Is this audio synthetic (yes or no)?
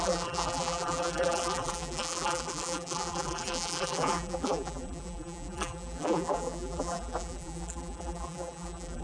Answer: yes